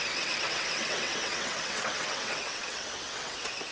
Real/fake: fake